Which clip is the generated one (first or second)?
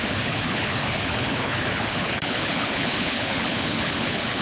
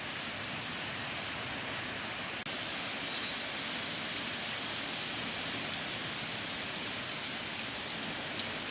first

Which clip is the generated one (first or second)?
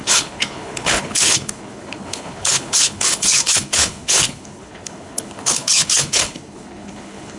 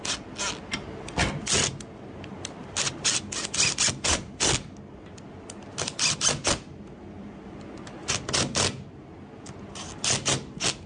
first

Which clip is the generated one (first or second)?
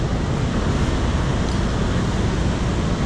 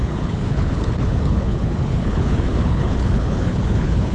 second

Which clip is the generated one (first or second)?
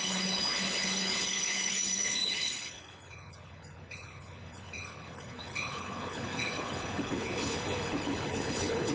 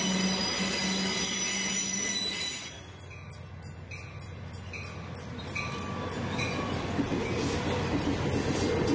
first